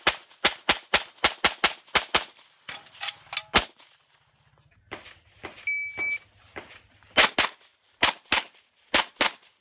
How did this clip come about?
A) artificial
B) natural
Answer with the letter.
B